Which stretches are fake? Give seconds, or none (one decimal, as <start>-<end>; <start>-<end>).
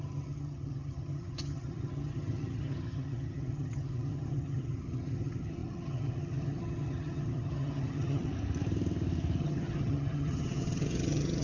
0.0-8.3; 9.4-11.4